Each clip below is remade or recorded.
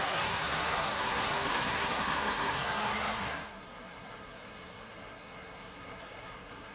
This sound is remade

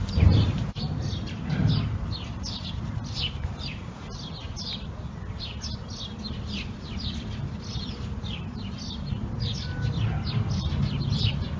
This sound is recorded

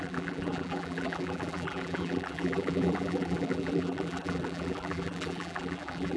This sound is remade